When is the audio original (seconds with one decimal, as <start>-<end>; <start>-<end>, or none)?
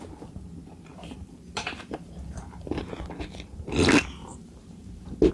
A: 0.0-0.9; 2.9-4.2